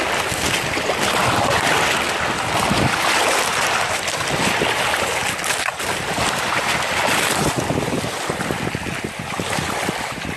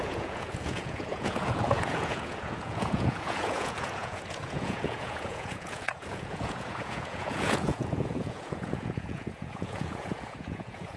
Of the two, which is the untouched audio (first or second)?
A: first